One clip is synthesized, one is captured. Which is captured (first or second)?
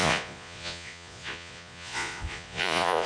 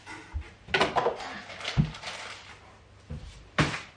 second